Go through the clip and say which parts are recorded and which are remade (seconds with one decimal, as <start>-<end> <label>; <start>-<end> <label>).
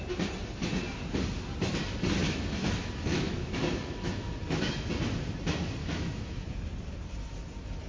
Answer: 0.0-2.2 recorded; 2.2-4.9 remade; 4.9-5.8 recorded; 5.8-6.6 remade; 6.6-7.9 recorded